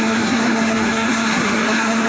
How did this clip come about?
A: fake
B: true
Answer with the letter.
A